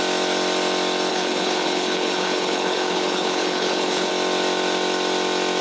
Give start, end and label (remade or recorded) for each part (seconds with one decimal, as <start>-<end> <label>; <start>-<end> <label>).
0.0-1.1 recorded; 1.1-4.1 remade; 4.1-5.6 recorded

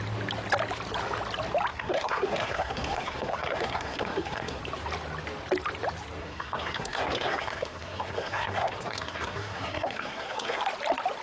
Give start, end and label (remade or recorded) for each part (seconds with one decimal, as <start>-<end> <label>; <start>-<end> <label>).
0.0-1.7 recorded; 1.7-4.6 remade; 4.6-6.2 recorded; 6.2-10.6 remade; 10.6-11.2 recorded

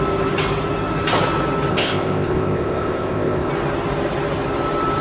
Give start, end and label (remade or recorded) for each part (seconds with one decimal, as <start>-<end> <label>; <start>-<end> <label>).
0.0-1.7 recorded; 1.7-3.5 remade; 3.5-5.0 recorded

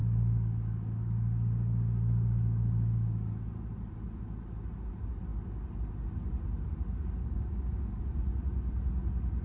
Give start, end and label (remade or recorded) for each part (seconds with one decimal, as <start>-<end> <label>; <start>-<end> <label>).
0.0-3.4 remade; 3.4-7.2 recorded; 7.2-8.0 remade; 8.0-9.4 recorded

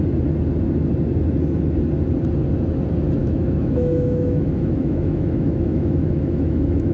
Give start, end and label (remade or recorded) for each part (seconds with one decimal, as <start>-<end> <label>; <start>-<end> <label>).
0.0-3.2 recorded; 3.2-6.9 remade

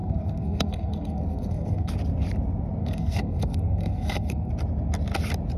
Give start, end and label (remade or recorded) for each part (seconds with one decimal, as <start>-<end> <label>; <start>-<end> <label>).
0.0-1.9 remade; 1.9-2.8 recorded; 2.8-4.5 remade; 4.5-5.6 recorded